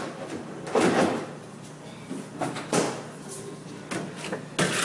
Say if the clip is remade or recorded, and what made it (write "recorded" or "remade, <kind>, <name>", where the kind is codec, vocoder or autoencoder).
recorded